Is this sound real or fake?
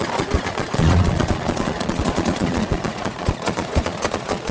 fake